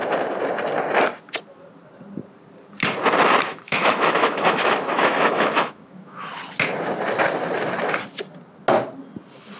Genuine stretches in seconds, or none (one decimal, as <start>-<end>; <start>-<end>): 0.0-3.5; 6.3-9.6